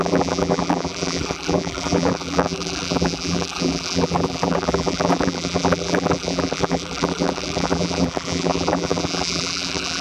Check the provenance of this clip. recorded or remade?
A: remade